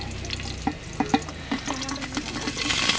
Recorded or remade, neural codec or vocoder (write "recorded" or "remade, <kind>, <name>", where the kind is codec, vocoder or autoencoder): recorded